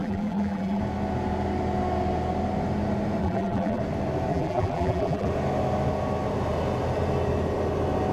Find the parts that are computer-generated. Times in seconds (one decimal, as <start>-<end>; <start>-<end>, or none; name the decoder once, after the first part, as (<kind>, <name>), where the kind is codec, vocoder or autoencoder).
0.0-0.8 (vocoder, BigVGAN v2); 3.2-3.8; 4.3-5.3